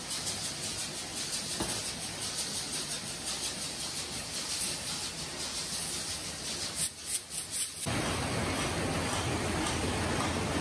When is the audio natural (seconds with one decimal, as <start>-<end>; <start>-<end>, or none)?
0.0-10.6